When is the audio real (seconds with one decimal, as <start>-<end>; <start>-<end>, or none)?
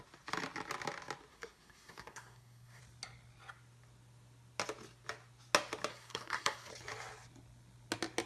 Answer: 0.0-1.3; 2.8-5.9; 6.7-8.3